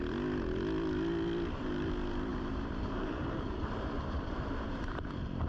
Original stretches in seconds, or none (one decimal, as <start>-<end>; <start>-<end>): 0.0-2.3